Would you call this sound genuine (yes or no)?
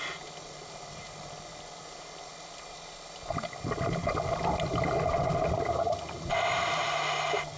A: yes